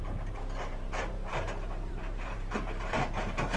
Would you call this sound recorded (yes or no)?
no